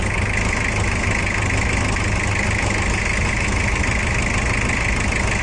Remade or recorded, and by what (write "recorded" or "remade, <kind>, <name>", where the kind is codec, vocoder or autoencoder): recorded